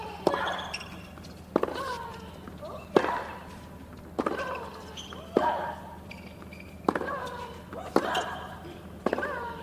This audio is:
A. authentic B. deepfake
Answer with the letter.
A